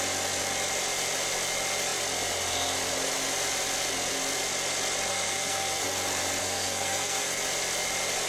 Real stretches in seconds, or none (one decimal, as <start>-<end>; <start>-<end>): 0.0-5.1; 5.8-6.4; 7.4-8.3